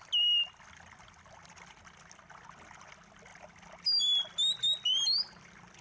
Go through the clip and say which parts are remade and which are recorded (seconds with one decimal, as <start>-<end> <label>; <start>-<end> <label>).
0.0-5.8 recorded